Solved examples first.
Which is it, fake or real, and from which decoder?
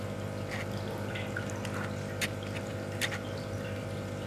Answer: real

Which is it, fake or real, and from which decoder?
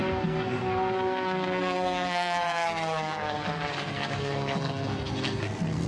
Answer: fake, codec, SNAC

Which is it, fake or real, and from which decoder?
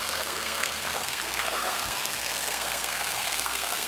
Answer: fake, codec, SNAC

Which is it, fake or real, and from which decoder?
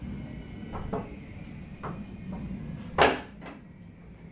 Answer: real